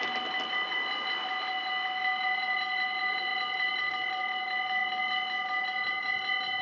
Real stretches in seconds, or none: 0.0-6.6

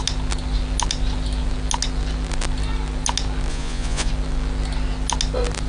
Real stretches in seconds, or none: 0.0-3.5; 4.1-5.7

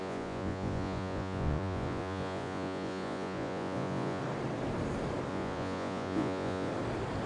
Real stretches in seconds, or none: 4.2-5.3; 6.7-7.3

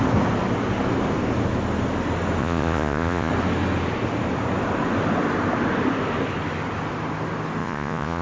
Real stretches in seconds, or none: 0.0-2.4; 3.3-7.6

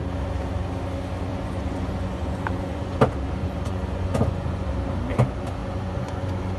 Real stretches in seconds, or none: 0.0-1.3; 3.0-3.4; 4.7-5.6